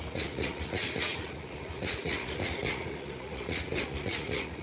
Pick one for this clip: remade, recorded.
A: remade